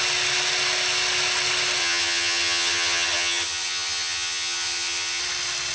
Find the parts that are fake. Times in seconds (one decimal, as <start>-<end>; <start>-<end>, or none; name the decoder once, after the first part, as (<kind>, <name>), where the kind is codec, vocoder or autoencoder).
1.8-5.2 (vocoder, HiFi-GAN)